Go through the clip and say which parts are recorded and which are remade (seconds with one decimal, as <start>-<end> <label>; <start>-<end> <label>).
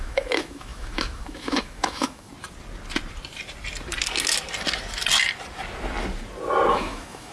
0.0-2.3 remade; 2.3-6.7 recorded; 6.7-7.3 remade